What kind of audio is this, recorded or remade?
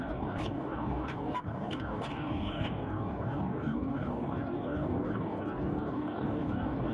remade